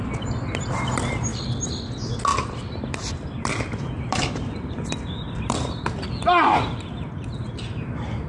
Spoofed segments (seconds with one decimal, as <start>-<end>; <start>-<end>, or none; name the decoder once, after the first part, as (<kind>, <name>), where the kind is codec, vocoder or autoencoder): 1.3-1.8 (vocoder, BigVGAN v2); 2.3-6.1